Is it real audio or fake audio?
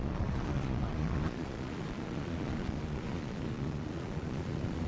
fake